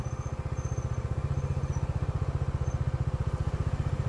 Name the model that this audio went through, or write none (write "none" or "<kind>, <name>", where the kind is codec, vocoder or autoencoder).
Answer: none